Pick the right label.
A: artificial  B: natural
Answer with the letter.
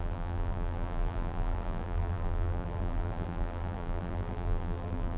A